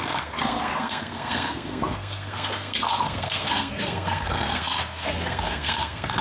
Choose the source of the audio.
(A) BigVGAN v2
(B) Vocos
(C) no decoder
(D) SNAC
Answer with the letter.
D